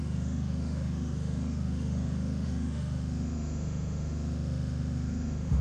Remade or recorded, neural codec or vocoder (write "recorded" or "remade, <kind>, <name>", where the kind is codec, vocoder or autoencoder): remade, autoencoder, DAC-VAE